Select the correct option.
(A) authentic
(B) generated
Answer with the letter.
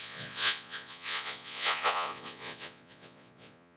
B